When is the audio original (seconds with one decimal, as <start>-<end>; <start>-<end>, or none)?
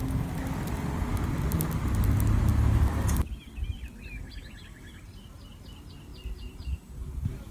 0.0-6.1